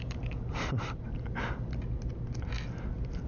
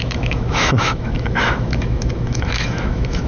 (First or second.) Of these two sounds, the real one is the first